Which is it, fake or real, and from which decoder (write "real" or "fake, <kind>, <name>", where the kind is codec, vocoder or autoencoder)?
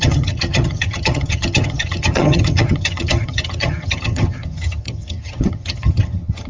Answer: fake, vocoder, HiFi-GAN